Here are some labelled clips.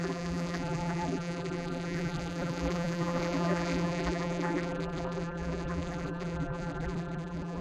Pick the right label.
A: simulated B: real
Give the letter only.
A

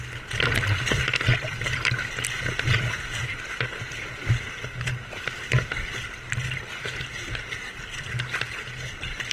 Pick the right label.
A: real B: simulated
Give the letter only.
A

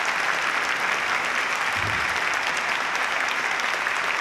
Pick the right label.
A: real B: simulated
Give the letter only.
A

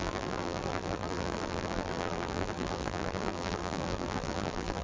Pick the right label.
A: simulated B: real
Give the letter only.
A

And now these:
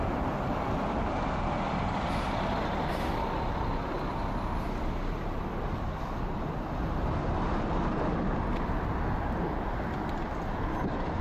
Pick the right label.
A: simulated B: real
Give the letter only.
B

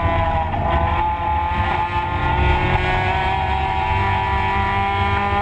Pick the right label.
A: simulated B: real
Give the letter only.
B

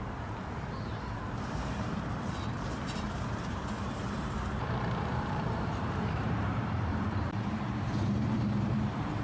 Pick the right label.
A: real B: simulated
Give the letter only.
B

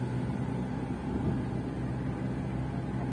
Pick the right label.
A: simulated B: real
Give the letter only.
B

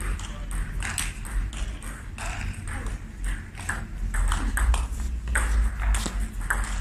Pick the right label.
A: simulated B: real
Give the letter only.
B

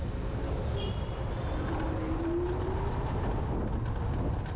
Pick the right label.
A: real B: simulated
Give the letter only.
A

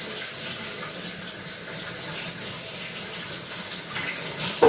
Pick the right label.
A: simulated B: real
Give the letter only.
A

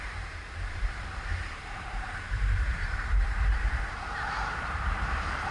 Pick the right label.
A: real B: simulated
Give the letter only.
B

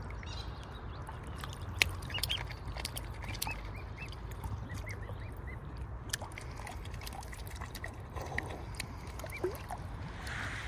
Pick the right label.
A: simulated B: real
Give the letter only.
B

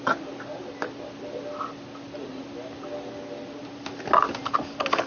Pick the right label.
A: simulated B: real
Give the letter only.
B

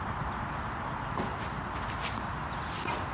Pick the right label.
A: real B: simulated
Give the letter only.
A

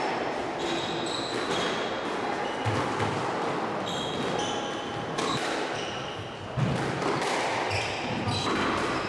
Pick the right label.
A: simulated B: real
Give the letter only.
B